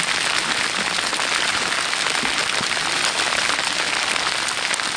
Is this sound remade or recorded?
recorded